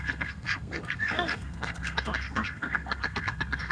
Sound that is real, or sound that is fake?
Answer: fake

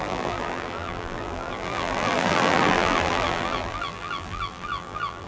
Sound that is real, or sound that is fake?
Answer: fake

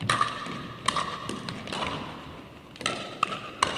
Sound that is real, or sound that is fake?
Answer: real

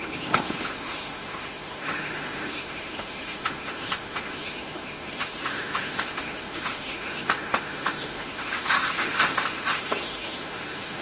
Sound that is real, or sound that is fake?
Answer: fake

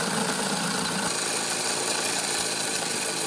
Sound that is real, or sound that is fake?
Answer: real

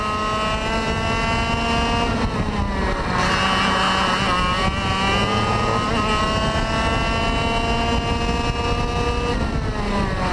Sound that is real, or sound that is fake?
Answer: real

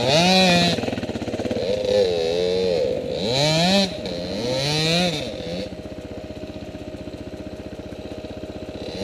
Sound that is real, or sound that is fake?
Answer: real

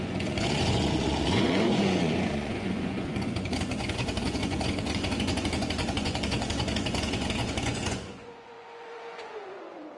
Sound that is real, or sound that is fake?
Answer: fake